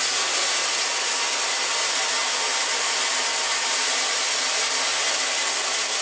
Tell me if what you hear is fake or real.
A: real